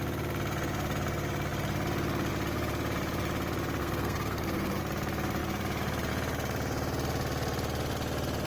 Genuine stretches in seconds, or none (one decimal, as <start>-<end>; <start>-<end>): 0.0-3.8; 4.8-8.5